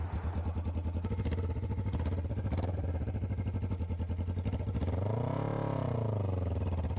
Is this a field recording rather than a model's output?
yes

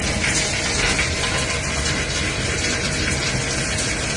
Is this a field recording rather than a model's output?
yes